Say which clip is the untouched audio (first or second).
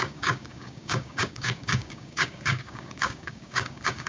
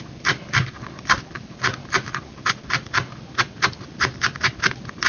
second